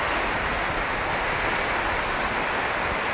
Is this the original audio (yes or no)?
yes